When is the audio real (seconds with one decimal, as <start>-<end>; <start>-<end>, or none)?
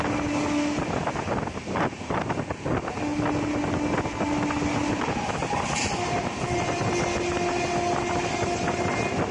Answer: 0.0-9.3